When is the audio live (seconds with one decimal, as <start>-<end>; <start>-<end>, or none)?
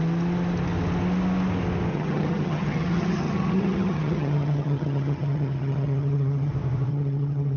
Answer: 0.0-1.9; 6.5-6.9